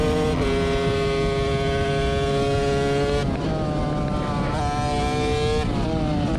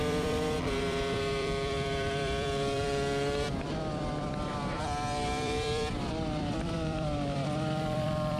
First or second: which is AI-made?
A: second